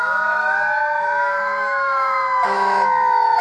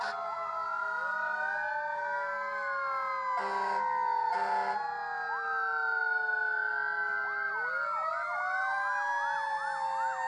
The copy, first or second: first